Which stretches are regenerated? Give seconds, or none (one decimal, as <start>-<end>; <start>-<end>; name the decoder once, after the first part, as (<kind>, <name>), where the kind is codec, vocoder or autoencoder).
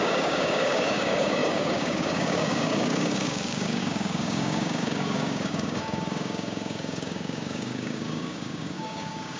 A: 0.0-9.4 (codec, DAC)